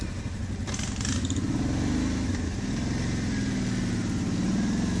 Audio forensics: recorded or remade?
recorded